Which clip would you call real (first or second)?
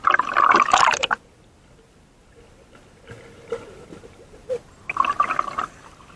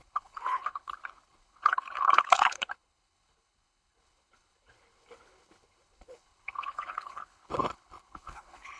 first